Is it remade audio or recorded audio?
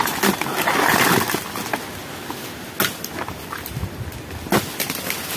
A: recorded